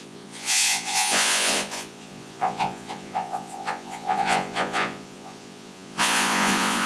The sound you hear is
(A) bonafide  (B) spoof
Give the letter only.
B